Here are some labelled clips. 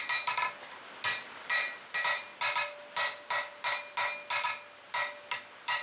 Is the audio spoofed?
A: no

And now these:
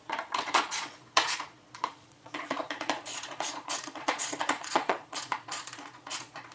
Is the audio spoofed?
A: yes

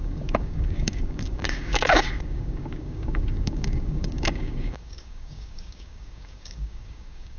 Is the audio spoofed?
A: yes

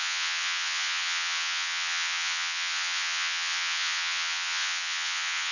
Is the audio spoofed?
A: yes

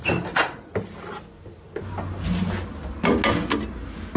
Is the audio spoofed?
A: no